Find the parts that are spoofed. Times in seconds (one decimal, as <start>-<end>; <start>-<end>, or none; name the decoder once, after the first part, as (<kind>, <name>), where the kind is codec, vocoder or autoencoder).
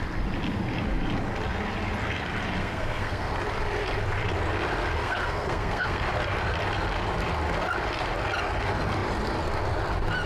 2.6-3.3 (codec, SNAC); 5.0-6.0